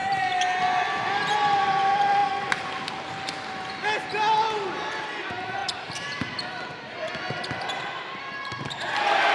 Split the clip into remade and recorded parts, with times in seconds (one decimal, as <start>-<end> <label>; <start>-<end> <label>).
0.0-5.6 recorded; 5.6-6.5 remade; 6.5-9.3 recorded